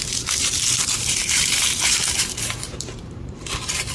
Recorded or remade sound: remade